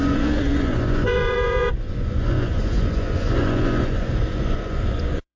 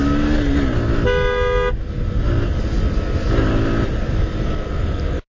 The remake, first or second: first